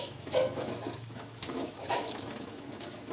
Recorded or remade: remade